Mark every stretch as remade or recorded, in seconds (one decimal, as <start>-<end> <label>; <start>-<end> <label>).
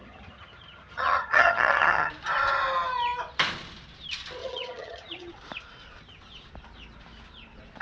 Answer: 0.0-2.1 remade; 2.1-4.4 recorded; 4.4-5.3 remade; 5.3-7.8 recorded